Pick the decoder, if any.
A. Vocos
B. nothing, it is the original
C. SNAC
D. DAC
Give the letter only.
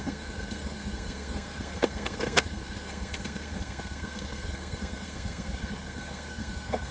C